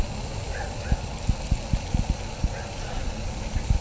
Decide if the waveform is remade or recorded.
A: recorded